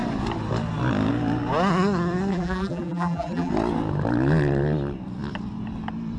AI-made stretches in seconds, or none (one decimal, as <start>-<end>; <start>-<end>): 2.3-3.5